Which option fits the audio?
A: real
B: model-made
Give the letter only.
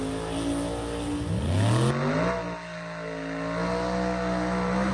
A